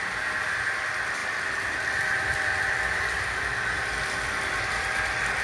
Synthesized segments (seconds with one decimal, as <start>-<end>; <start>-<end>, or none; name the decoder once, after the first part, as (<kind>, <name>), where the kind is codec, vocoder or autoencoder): 0.0-5.4 (vocoder, BigVGAN v2)